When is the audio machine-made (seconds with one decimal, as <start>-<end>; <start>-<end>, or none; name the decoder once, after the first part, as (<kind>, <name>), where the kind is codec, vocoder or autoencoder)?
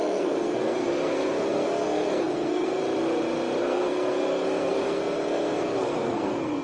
0.0-2.8 (codec, SNAC); 3.6-6.6